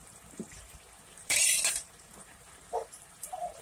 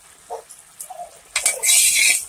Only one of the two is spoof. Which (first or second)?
first